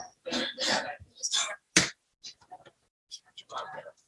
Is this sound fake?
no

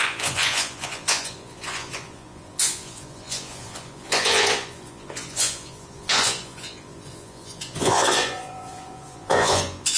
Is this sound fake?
yes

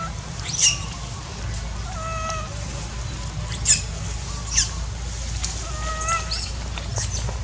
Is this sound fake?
no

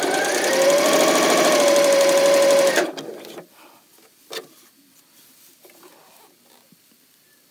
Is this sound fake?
no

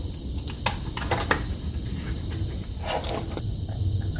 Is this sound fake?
no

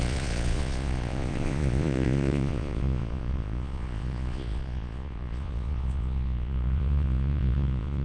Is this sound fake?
yes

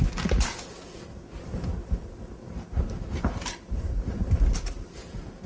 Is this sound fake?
no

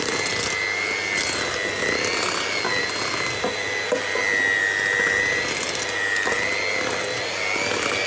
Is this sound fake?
no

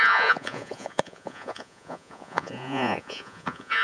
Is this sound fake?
yes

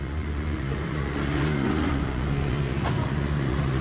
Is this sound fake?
yes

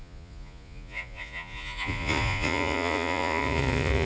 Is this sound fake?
yes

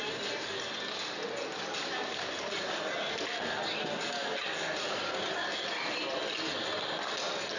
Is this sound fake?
no